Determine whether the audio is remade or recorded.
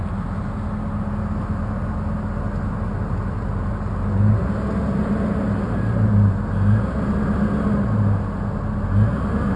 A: recorded